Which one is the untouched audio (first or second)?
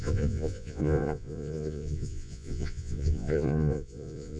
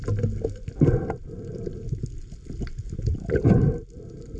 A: second